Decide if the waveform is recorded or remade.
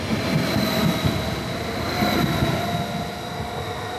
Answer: recorded